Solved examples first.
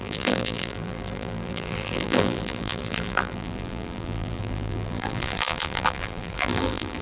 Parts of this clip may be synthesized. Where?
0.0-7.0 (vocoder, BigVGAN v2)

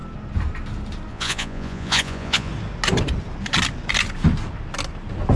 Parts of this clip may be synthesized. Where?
1.1-2.5 (vocoder, Vocos)